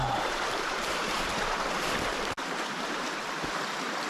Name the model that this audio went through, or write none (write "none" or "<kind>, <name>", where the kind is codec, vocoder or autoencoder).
vocoder, BigVGAN v2